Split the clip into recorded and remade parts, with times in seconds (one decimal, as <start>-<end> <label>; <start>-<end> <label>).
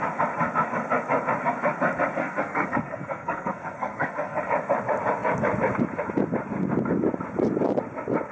0.0-2.2 recorded; 2.2-4.4 remade; 4.4-8.3 recorded